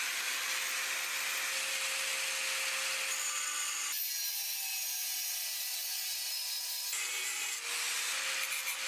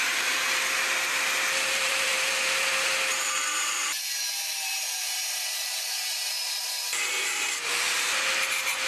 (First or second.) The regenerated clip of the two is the second